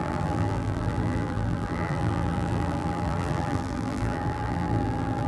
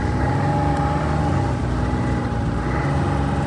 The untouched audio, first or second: second